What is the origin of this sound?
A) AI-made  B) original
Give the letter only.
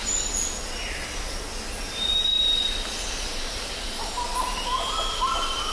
B